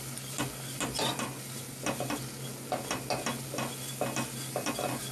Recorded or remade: recorded